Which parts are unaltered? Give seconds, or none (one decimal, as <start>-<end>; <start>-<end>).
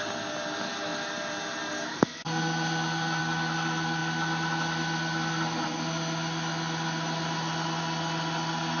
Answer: 0.0-8.8